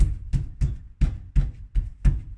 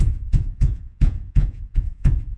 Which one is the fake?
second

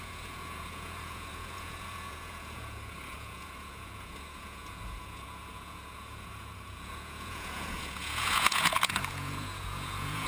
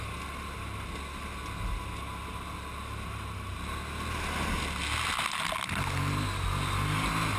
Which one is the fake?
first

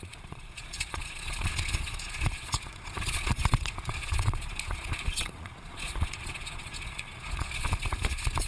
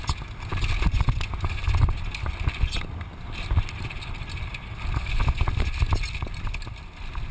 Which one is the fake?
first